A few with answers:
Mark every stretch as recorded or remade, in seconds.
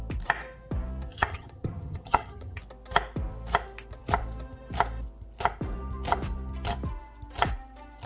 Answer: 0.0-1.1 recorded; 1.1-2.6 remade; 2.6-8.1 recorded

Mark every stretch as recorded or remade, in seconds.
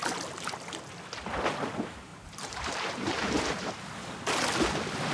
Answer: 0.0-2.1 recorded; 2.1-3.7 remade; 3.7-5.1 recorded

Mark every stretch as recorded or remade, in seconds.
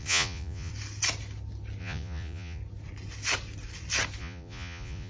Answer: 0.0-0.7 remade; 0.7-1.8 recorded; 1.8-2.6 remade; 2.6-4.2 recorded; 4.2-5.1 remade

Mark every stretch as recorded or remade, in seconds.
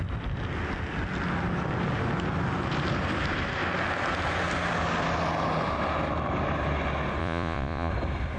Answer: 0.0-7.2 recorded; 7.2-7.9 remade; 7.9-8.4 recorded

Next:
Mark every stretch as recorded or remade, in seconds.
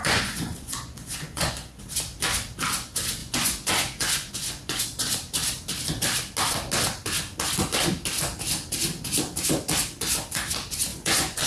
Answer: 0.0-1.8 remade; 1.8-3.2 recorded; 3.2-4.8 remade; 4.8-10.9 recorded; 10.9-11.5 remade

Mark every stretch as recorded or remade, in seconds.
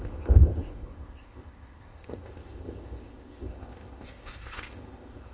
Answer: 0.0-5.3 remade